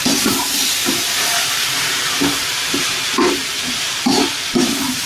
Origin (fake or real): fake